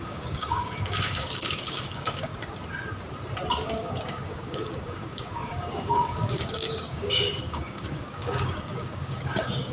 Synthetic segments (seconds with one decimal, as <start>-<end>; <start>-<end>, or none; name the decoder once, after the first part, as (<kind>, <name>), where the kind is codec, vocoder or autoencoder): 0.0-2.3 (codec, DAC); 3.6-9.7